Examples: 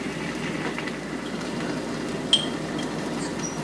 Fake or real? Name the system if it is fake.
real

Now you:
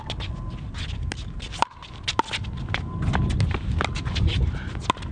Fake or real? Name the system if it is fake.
real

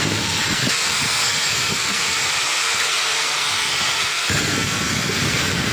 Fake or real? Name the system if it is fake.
fake, codec, SNAC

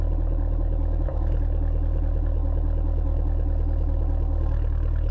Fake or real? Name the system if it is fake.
real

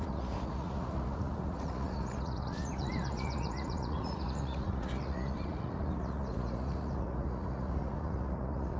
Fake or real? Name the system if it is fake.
fake, vocoder, Vocos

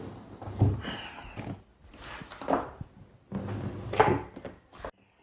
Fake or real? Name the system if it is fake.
real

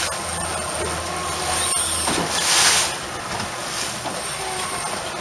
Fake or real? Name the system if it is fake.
real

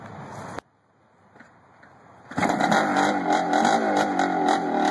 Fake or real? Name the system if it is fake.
real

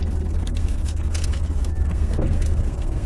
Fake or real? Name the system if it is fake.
fake, codec, SNAC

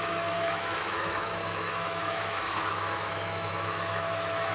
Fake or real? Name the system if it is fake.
fake, autoencoder, DAC-VAE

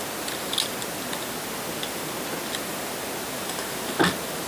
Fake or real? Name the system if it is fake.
real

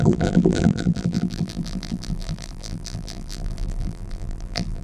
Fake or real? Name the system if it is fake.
fake, vocoder, BigVGAN v2